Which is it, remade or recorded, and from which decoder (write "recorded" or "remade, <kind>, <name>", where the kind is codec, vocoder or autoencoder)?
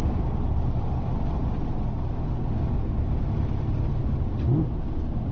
recorded